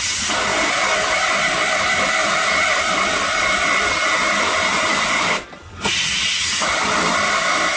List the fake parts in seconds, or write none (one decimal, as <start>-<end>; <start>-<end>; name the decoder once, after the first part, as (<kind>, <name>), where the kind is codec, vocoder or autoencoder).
2.2-6.2 (vocoder, BigVGAN v2)